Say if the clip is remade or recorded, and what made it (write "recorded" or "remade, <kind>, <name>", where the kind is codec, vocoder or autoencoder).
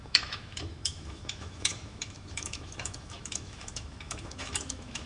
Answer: remade, autoencoder, DAC-VAE